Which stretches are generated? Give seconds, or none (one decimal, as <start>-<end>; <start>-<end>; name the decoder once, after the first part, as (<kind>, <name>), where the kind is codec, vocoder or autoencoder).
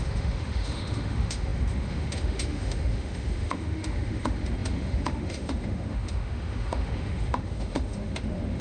0.0-8.6 (autoencoder, DAC-VAE)